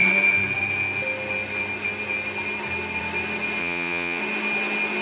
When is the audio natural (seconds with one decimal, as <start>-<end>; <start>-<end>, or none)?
0.0-3.6; 4.2-5.0